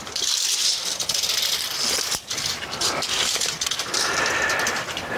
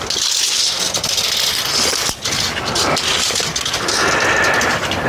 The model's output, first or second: first